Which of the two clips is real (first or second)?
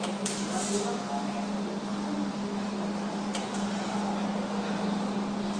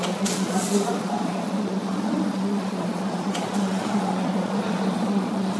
first